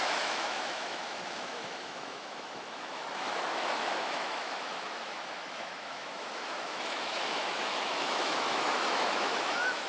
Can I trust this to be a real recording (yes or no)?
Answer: no